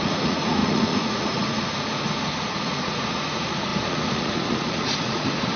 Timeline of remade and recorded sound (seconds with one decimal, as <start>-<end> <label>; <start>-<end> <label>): 0.0-5.6 remade